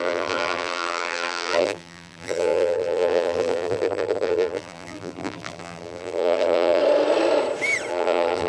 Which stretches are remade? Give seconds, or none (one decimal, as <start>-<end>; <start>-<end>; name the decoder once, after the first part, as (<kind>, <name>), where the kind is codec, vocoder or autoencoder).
0.0-6.8 (vocoder, BigVGAN v2); 7.9-8.5